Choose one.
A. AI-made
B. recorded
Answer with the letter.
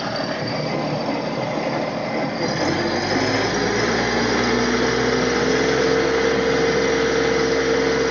B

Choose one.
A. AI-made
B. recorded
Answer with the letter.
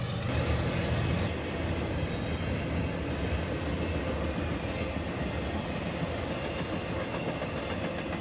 B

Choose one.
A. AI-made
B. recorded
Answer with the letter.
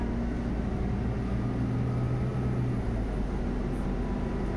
B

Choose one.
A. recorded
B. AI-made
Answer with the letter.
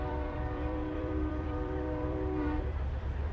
B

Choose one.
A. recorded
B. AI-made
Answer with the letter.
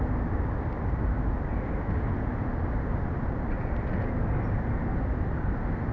A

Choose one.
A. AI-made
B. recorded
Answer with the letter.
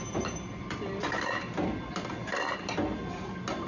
B